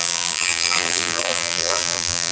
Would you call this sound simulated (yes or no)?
yes